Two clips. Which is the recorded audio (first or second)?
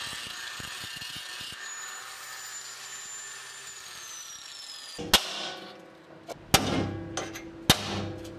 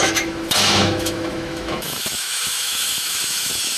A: first